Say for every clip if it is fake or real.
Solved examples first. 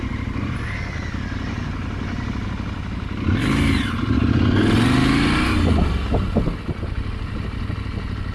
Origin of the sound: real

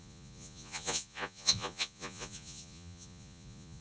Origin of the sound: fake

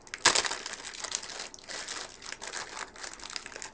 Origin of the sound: real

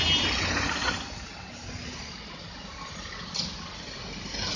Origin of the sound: real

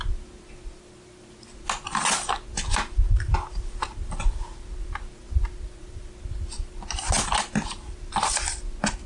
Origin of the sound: real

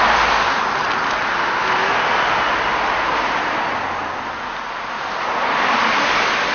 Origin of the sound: real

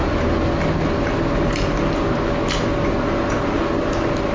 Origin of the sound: real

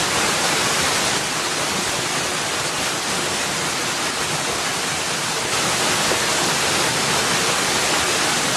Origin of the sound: real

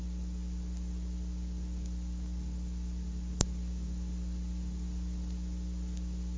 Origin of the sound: real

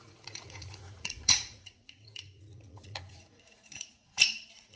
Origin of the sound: fake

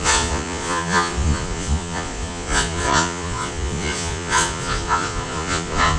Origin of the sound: fake